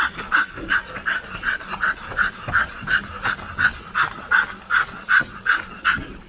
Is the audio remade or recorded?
recorded